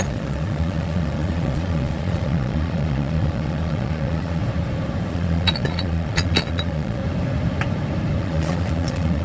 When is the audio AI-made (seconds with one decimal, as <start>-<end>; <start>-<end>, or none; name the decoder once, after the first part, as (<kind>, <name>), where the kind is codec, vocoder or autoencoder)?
0.0-4.4 (vocoder, Vocos); 5.1-7.0; 8.2-9.2